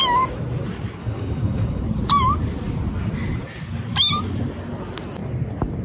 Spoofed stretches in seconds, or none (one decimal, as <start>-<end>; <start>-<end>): 1.0-1.8